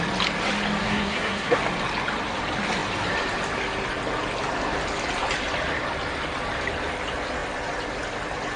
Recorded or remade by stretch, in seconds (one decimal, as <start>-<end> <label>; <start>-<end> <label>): 0.0-0.8 recorded; 0.8-1.6 remade; 1.6-8.6 recorded